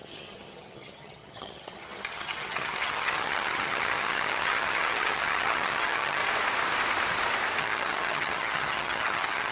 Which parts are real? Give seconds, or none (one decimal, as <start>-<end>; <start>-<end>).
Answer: 6.2-7.6